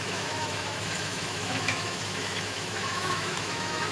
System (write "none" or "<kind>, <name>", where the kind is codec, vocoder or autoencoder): autoencoder, DAC-VAE